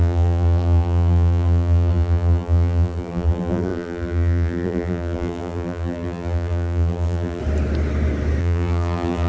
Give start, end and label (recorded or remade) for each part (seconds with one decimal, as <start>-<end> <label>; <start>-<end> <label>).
0.0-7.4 remade; 7.4-8.4 recorded; 8.4-9.3 remade